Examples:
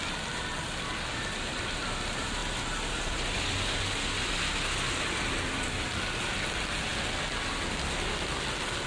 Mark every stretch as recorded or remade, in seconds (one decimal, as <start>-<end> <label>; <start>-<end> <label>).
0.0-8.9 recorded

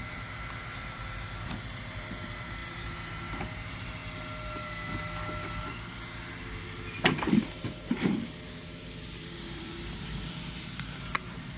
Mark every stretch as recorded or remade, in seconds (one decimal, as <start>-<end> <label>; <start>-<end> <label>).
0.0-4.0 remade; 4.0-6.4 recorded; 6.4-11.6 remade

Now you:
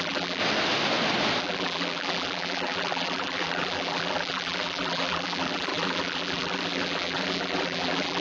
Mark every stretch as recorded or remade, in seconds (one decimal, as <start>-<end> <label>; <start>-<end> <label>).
0.0-0.4 remade; 0.4-1.4 recorded; 1.4-8.2 remade

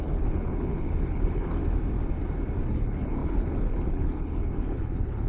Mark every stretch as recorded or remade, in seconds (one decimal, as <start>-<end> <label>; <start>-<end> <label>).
0.0-1.6 remade; 1.6-2.7 recorded; 2.7-5.3 remade